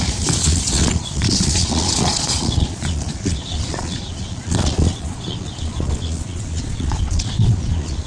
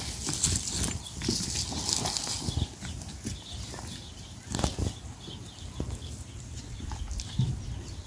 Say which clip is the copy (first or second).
first